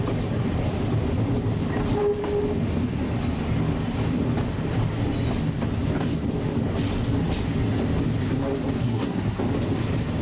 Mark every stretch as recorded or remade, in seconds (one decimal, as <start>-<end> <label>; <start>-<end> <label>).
0.0-8.8 recorded; 8.8-9.4 remade; 9.4-10.2 recorded